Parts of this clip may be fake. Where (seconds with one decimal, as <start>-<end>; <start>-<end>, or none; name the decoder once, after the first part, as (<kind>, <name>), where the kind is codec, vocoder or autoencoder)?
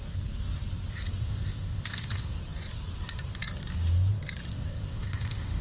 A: 1.2-2.4 (codec, ZipCodec); 4.5-5.6